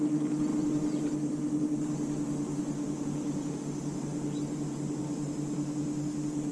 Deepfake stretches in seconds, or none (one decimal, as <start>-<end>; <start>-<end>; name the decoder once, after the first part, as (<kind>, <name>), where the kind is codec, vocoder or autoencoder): none

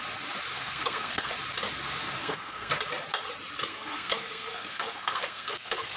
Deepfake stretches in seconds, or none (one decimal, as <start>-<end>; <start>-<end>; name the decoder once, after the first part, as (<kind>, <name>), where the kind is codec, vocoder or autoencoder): 0.5-1.3 (codec, SNAC); 2.2-2.7; 3.7-6.0

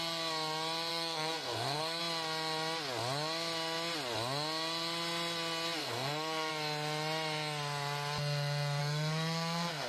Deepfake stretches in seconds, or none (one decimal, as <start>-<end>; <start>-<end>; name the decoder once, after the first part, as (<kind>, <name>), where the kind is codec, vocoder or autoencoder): 0.9-2.0 (codec, SNAC); 5.8-6.5; 8.8-9.9